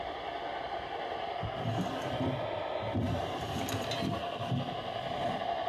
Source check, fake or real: real